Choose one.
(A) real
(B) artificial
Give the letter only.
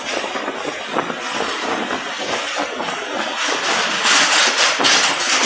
A